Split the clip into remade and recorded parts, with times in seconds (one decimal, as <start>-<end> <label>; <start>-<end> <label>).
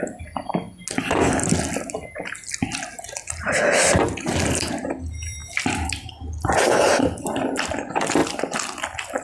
0.0-9.2 recorded